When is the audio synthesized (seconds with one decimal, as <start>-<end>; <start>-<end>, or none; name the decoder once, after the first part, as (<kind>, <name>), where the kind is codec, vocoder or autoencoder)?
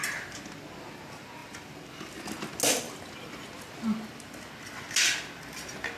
none